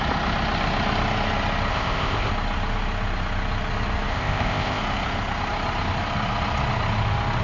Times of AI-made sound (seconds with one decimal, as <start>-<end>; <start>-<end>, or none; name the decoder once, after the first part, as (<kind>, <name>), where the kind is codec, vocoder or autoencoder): 1.7-2.3 (codec, ZipCodec); 4.1-4.8